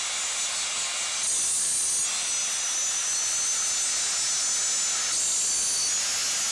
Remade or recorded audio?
recorded